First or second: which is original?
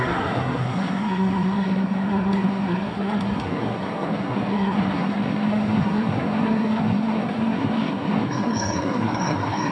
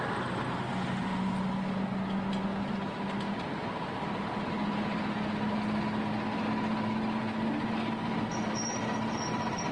second